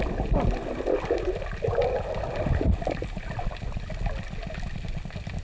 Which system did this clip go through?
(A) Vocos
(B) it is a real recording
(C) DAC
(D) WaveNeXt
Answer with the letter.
B